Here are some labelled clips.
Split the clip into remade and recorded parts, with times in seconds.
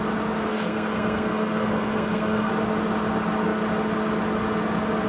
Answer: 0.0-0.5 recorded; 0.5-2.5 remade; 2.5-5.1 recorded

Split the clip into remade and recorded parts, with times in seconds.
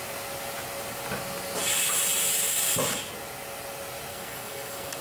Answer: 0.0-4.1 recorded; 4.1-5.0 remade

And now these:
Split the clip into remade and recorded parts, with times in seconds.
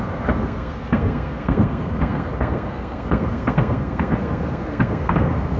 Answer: 0.0-5.6 remade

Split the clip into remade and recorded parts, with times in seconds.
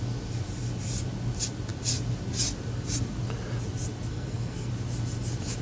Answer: 0.0-4.1 recorded; 4.1-4.7 remade; 4.7-5.6 recorded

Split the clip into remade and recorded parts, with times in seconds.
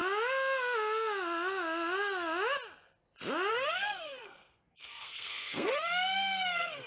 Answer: 0.0-3.5 recorded; 3.5-6.9 remade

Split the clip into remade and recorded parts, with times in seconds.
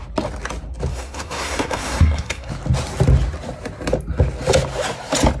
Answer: 0.0-0.9 recorded; 0.9-2.5 remade; 2.5-5.4 recorded